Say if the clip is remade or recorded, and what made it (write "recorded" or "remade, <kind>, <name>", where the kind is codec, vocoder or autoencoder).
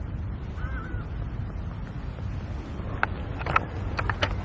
recorded